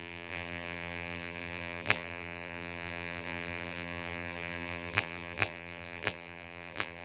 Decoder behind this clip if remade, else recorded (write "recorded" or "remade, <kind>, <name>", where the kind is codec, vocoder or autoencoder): remade, vocoder, BigVGAN v2